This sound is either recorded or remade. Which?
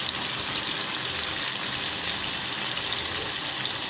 recorded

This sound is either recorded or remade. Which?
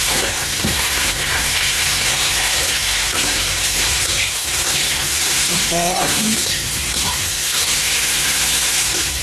remade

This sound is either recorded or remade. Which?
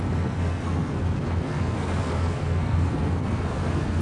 remade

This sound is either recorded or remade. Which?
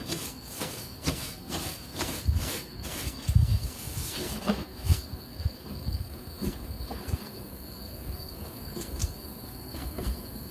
remade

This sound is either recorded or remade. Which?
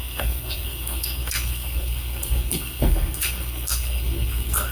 remade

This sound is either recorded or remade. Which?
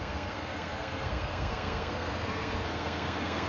remade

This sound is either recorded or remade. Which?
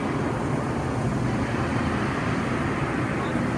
recorded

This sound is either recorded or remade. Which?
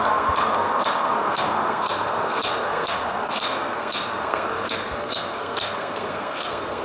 remade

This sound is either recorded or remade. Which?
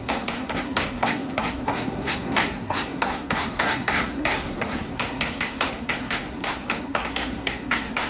remade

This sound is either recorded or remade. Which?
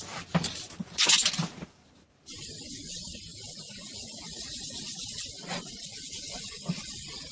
recorded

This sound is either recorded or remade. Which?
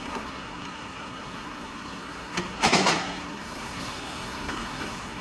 remade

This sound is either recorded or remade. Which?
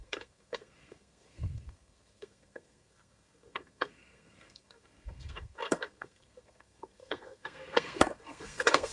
remade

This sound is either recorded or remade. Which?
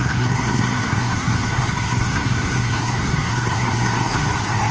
remade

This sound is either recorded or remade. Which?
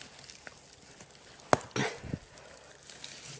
recorded